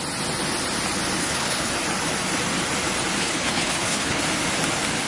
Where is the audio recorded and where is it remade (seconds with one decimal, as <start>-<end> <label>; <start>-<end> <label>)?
0.0-1.2 recorded; 1.2-1.7 remade; 1.7-3.2 recorded; 3.2-4.2 remade; 4.2-5.1 recorded